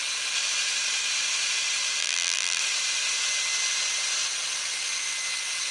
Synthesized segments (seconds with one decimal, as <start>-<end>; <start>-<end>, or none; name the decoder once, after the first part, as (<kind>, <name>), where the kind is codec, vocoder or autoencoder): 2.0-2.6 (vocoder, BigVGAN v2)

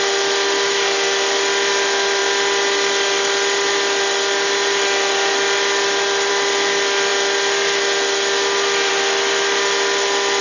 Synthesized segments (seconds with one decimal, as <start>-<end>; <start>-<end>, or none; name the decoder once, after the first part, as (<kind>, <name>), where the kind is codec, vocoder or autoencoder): none

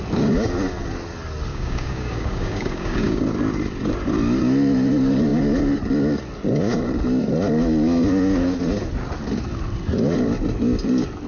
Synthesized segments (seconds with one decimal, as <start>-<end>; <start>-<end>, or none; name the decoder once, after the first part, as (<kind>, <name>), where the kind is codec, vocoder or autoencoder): 1.5-3.2 (codec, DAC)

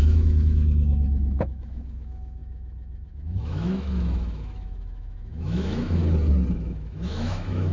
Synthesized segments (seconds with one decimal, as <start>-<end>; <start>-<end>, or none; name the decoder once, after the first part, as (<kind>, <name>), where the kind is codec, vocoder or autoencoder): 0.0-6.0 (autoencoder, DAC-VAE); 6.5-7.7